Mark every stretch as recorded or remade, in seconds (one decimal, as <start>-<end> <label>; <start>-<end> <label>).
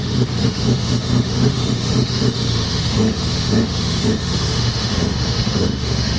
0.0-6.2 remade